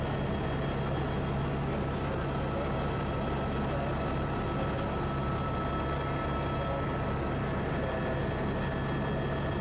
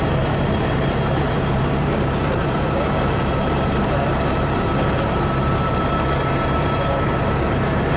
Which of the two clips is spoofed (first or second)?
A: second